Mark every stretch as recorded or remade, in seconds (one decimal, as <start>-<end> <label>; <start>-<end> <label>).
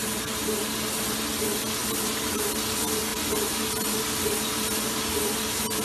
0.0-5.8 recorded